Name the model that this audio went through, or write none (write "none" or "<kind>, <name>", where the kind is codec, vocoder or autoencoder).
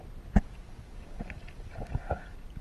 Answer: none